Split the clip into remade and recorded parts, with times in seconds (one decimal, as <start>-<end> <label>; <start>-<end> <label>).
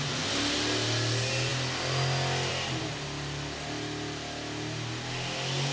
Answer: 0.0-5.7 recorded